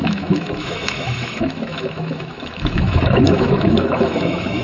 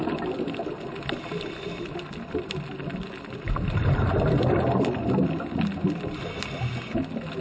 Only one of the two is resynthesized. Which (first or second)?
first